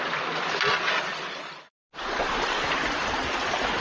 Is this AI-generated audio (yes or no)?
no